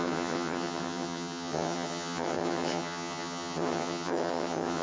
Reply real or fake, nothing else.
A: fake